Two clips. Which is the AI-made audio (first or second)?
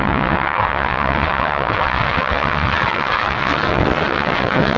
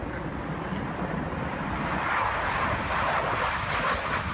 first